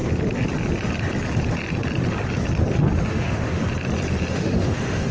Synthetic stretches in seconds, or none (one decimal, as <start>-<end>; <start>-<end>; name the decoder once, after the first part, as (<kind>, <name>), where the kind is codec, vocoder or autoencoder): 3.1-3.6 (autoencoder, DAC-VAE); 4.3-5.1